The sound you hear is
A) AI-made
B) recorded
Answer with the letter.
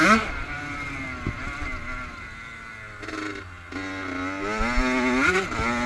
B